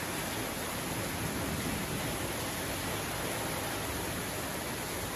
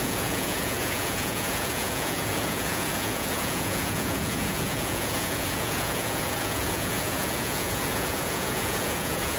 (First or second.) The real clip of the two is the first